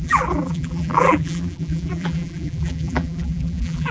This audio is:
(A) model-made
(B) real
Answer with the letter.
A